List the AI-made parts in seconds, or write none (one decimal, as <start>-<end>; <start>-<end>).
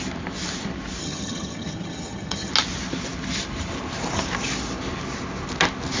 1.0-2.5